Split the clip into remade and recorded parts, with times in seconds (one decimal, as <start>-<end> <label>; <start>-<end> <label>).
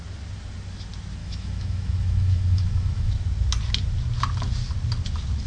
0.0-1.2 recorded; 1.2-3.1 remade; 3.1-5.5 recorded